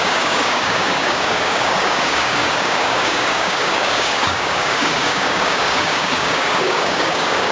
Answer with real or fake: fake